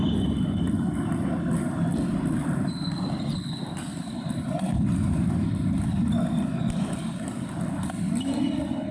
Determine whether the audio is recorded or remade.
recorded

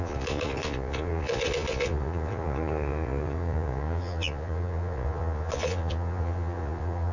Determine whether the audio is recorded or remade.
remade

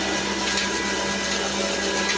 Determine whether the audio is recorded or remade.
recorded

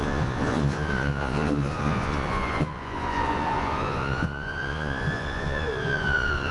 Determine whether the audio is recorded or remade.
remade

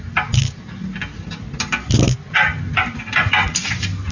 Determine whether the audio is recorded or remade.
recorded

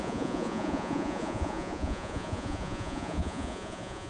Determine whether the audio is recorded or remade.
remade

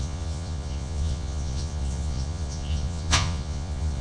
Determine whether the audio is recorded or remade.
remade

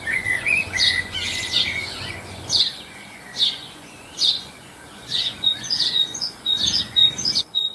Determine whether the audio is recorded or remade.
remade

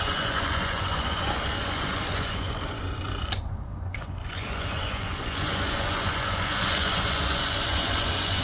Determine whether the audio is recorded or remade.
remade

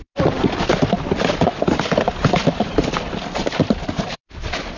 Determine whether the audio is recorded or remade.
recorded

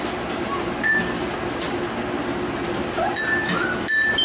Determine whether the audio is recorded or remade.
recorded